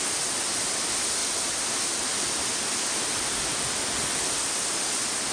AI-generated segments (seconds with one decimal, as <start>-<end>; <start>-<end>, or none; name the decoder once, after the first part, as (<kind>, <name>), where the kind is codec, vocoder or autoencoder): none